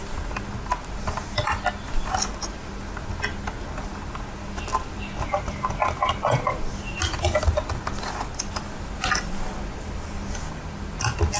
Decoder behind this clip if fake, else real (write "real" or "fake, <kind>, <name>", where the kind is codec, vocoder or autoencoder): real